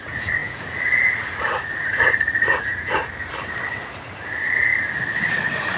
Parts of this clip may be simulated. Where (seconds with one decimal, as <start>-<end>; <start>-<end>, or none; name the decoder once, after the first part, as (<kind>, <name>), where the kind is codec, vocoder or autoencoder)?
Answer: 0.0-3.0 (vocoder, Vocos); 3.8-4.7; 5.3-5.8